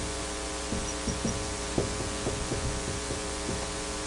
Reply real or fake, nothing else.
fake